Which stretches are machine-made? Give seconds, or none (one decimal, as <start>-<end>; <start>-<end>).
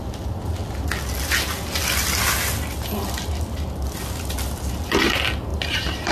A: 5.5-6.1